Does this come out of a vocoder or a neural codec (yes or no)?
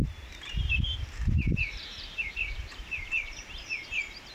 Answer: yes